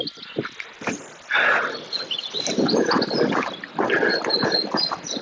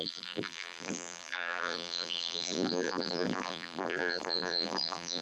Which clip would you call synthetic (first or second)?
second